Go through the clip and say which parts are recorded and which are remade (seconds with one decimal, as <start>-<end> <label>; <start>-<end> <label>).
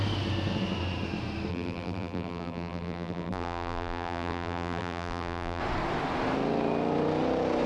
0.0-1.5 recorded; 1.5-5.6 remade; 5.6-7.7 recorded